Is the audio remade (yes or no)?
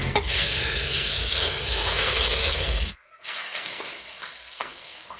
yes